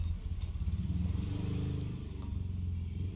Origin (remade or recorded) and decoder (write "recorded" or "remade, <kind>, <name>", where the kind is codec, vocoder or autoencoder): recorded